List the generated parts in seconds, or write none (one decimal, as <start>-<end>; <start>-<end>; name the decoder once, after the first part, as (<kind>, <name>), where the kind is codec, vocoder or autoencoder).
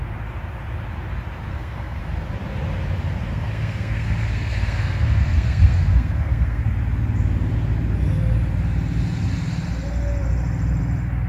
1.5-2.0 (codec, SNAC); 3.3-6.6